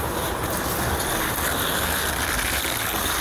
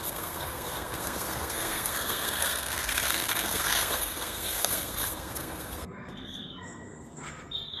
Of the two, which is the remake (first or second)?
second